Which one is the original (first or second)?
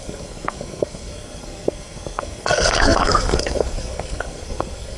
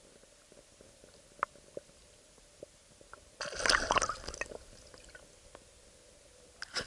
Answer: second